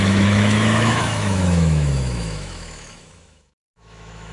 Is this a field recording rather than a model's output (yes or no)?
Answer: no